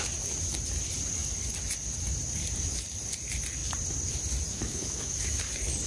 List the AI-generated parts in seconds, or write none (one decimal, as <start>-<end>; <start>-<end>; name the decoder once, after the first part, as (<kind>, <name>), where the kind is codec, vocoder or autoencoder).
4.5-5.4 (autoencoder, DAC-VAE)